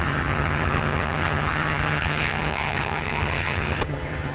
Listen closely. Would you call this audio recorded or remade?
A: remade